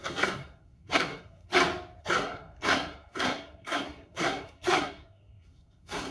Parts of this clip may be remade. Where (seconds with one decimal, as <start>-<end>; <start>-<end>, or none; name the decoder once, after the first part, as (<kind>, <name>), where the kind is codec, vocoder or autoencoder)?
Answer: 0.0-1.5 (codec, SNAC); 2.0-6.1